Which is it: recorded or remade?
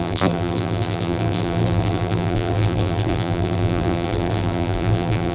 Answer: remade